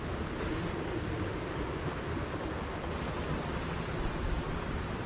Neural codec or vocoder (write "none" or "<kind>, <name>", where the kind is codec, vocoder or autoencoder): none